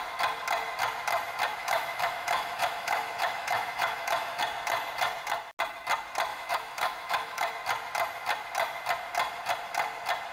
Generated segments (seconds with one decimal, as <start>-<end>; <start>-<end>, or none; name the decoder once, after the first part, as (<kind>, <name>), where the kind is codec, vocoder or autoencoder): 1.6-4.4 (autoencoder, DAC-VAE); 6.3-7.5